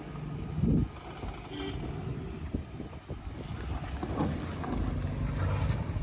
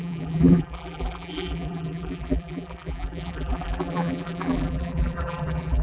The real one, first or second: first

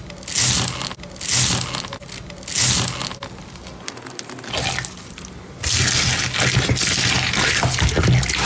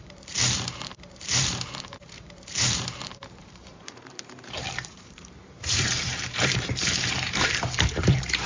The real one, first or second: first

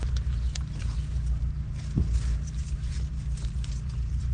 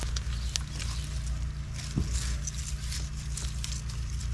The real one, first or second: second